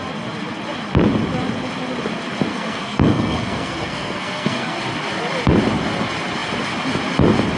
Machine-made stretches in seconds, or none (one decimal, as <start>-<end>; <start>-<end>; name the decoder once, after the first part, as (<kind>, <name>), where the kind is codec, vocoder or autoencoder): 2.5-4.8 (codec, SNAC)